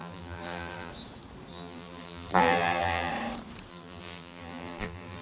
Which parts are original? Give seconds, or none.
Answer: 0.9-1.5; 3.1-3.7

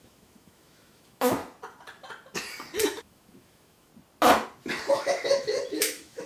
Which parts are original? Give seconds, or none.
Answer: 1.4-3.0; 3.9-4.9

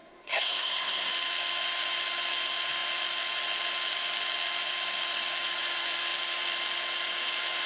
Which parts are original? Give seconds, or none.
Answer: 1.1-7.7

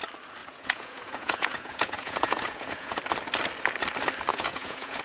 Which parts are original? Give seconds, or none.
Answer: 0.0-0.4; 3.0-4.3

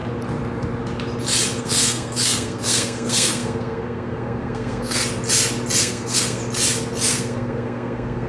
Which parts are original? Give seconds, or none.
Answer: 0.0-1.6; 5.0-5.8; 6.4-7.1